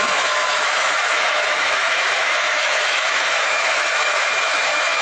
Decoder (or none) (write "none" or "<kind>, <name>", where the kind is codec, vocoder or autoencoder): autoencoder, DAC-VAE